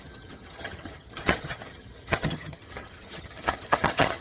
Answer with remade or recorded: remade